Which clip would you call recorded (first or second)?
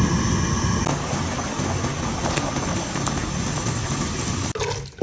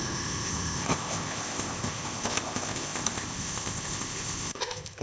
first